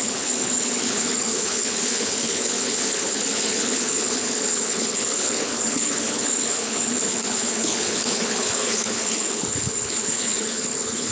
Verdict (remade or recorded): remade